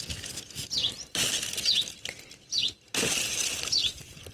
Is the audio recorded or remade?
recorded